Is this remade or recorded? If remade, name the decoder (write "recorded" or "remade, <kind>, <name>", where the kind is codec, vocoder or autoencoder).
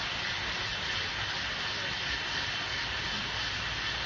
recorded